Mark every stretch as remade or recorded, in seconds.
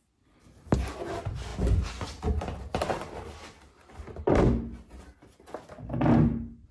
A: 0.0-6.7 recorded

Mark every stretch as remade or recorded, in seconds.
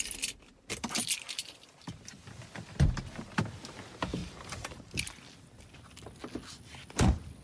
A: 0.0-4.2 recorded; 4.2-4.9 remade; 4.9-7.4 recorded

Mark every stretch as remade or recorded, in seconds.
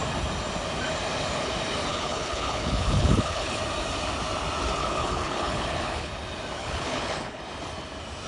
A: 0.0-1.9 recorded; 1.9-3.6 remade; 3.6-4.8 recorded; 4.8-6.1 remade; 6.1-6.6 recorded; 6.6-7.4 remade; 7.4-8.3 recorded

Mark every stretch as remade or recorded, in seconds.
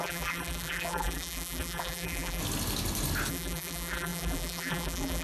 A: 0.0-2.4 remade; 2.4-3.3 recorded; 3.3-5.2 remade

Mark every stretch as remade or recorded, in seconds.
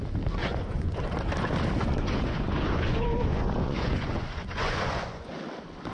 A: 0.0-0.4 recorded; 0.4-1.1 remade; 1.1-1.8 recorded; 1.8-5.3 remade; 5.3-5.9 recorded